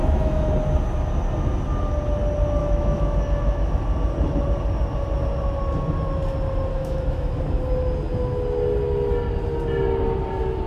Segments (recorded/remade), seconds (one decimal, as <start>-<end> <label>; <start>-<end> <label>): 0.0-0.5 remade; 0.5-2.6 recorded; 2.6-3.7 remade; 3.7-6.7 recorded; 6.7-7.4 remade; 7.4-10.7 recorded